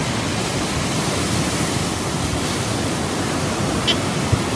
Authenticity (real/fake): fake